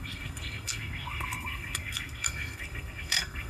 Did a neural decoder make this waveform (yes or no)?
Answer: yes